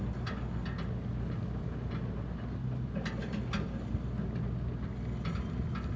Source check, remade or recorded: recorded